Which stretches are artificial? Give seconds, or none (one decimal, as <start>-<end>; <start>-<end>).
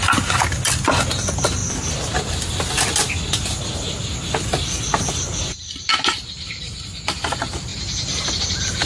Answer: none